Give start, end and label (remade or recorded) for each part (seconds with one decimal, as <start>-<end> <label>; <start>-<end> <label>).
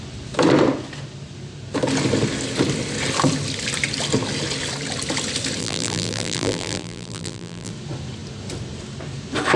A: 0.0-5.6 recorded; 5.6-7.7 remade; 7.7-9.6 recorded